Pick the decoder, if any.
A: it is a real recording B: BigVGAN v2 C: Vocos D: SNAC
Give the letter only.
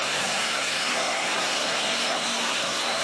D